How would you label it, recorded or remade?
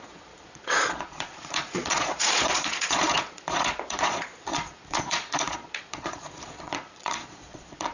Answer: remade